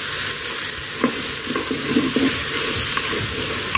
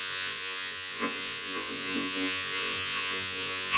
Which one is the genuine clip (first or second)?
first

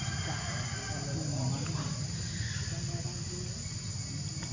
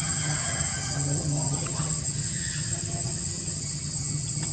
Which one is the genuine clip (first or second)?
first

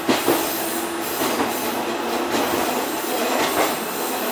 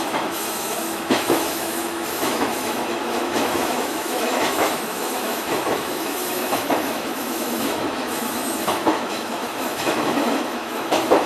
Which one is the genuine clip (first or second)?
first